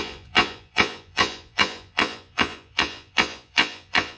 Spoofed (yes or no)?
yes